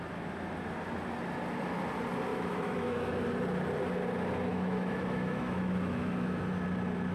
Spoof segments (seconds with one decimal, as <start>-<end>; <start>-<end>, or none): 2.3-3.1; 4.5-6.4